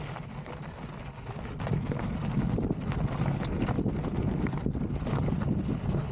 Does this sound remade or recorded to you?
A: recorded